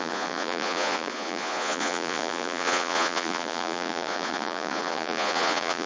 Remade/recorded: remade